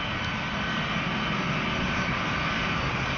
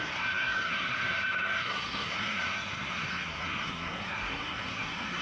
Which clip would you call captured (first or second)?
first